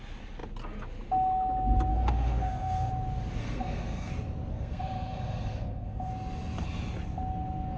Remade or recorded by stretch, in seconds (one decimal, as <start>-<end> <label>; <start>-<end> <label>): 0.0-1.9 recorded; 1.9-2.9 remade; 2.9-3.4 recorded; 3.4-4.1 remade; 4.1-4.5 recorded; 4.5-6.1 remade; 6.1-7.8 recorded